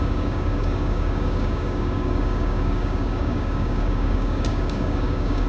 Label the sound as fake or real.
fake